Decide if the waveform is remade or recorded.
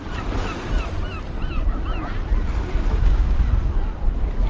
recorded